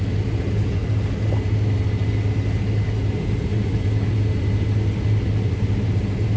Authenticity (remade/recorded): recorded